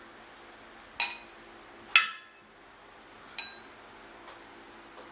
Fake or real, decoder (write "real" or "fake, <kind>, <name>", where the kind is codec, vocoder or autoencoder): real